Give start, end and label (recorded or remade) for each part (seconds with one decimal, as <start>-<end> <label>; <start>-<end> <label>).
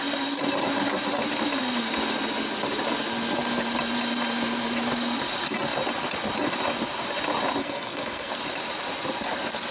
0.0-7.6 recorded; 7.6-8.4 remade; 8.4-9.7 recorded